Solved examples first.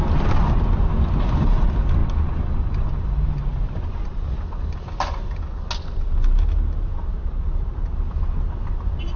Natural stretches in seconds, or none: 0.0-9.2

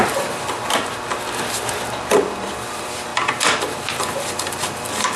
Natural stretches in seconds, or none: 0.6-2.4; 3.1-3.9

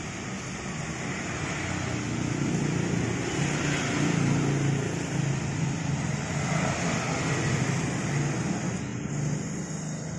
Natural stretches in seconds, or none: 0.0-10.2

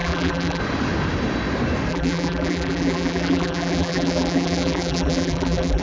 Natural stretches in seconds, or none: 0.6-1.9